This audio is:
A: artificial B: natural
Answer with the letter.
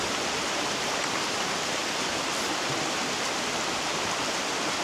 B